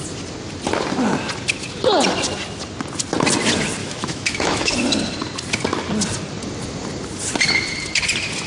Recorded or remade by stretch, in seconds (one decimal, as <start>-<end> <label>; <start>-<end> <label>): 0.0-3.8 recorded; 3.8-4.7 remade; 4.7-8.5 recorded